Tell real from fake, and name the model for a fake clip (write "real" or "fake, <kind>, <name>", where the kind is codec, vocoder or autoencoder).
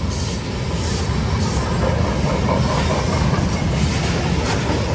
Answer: real